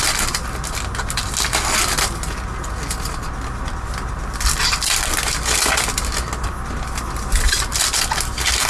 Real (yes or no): yes